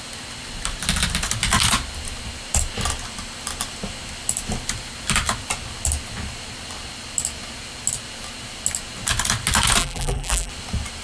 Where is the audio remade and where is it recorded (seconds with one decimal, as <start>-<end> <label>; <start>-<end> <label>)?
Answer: 0.0-9.8 recorded; 9.8-10.5 remade; 10.5-11.0 recorded